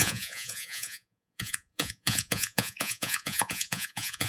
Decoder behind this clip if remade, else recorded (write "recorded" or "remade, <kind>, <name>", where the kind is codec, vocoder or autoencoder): remade, vocoder, Vocos